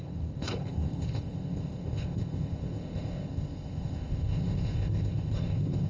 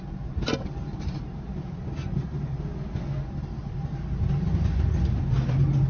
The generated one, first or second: first